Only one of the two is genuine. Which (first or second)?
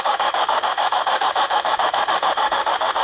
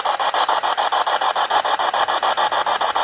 second